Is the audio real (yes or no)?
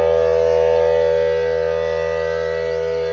yes